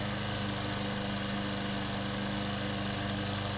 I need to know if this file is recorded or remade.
recorded